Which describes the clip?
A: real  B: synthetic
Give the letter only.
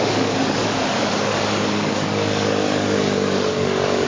B